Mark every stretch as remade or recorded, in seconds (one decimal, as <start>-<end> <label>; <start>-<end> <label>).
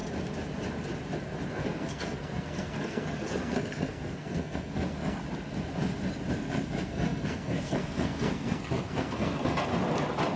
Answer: 0.0-1.5 recorded; 1.5-5.2 remade; 5.2-6.3 recorded; 6.3-9.7 remade; 9.7-10.4 recorded